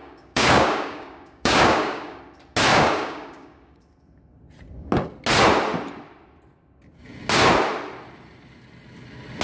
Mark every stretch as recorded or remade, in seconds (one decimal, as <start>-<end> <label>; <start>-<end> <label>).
0.0-2.2 remade; 2.2-2.7 recorded; 2.7-3.8 remade; 3.8-9.4 recorded